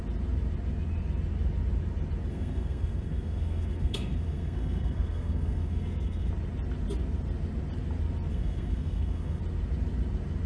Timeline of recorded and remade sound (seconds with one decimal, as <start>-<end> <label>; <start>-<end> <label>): 0.0-2.3 recorded; 2.3-6.3 remade; 6.3-8.3 recorded; 8.3-9.4 remade; 9.4-10.5 recorded